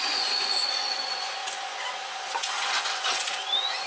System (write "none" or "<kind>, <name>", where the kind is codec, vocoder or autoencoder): vocoder, Vocos